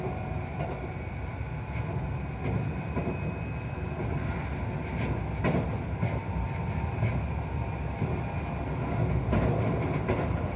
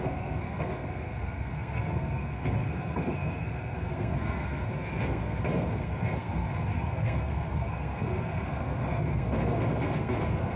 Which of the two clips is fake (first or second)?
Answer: second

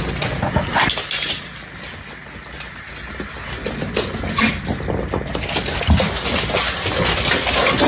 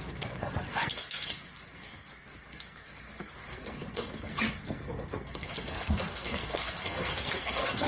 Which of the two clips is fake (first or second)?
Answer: second